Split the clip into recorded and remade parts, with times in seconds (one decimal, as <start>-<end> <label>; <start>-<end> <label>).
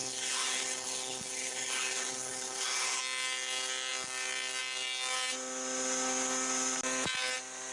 0.0-3.0 remade; 3.0-7.7 recorded